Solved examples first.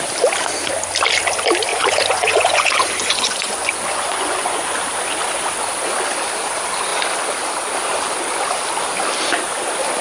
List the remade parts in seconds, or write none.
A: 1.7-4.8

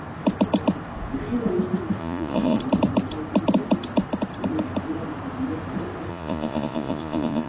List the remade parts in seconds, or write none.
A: 2.0-2.6; 6.1-7.5

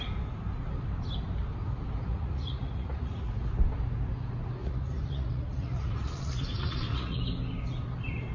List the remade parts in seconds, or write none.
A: 2.1-3.3; 4.6-7.2

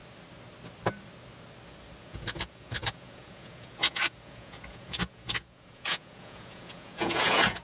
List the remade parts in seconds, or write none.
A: 2.0-7.6

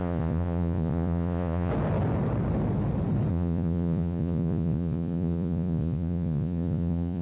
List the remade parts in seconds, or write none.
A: 0.0-1.7; 3.3-7.2

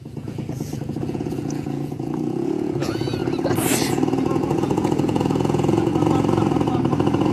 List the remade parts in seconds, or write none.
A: 0.0-3.2; 3.9-5.9